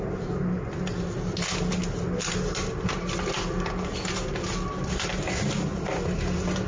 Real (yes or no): yes